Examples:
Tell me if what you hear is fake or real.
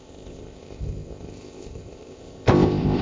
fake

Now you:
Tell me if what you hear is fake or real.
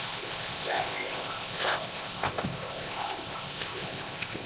fake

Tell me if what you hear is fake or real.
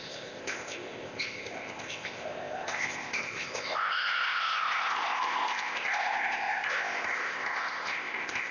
fake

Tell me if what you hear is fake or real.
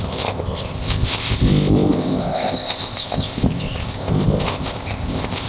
fake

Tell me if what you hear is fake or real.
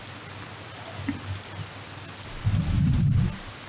real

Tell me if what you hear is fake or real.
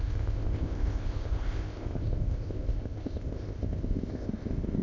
fake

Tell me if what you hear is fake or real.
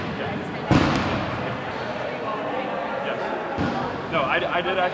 real